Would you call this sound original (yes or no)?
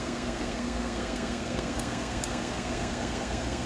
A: no